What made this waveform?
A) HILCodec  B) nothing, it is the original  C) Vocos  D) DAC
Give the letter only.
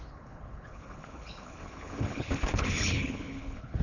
A